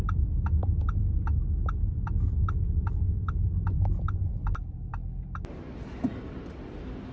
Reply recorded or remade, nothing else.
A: recorded